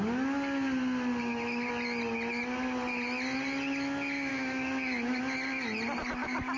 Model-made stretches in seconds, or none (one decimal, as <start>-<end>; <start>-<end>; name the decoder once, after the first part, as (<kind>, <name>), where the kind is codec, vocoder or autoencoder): 1.2-1.7 (autoencoder, DAC-VAE); 4.3-5.2